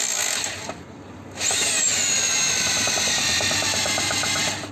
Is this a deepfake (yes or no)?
no